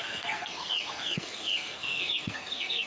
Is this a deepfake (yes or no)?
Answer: yes